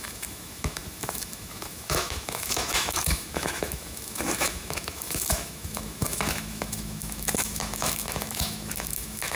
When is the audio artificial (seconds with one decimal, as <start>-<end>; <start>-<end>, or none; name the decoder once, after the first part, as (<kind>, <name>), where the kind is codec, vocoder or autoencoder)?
0.0-9.4 (autoencoder, DAC-VAE)